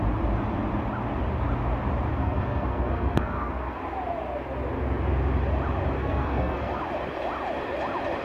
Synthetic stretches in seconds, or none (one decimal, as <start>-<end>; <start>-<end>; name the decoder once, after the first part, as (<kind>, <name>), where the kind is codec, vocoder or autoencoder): 2.1-3.8 (codec, SNAC); 6.0-6.8